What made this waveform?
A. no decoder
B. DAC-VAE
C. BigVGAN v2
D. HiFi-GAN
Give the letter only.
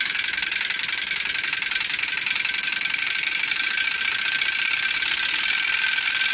A